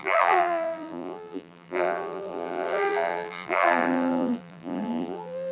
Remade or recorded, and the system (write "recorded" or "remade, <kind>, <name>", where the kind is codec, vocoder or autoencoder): remade, vocoder, BigVGAN v2